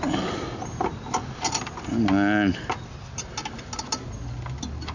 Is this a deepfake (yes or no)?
no